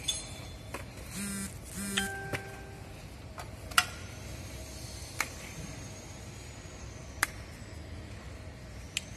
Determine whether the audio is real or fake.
real